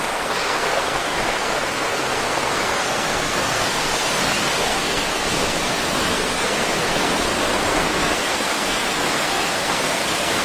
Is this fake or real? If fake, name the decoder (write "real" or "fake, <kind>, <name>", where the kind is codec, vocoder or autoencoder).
fake, codec, SNAC